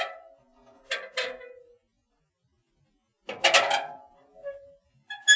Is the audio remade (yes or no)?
no